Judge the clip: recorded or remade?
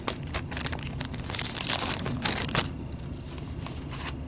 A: recorded